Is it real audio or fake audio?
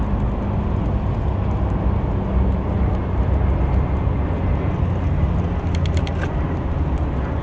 real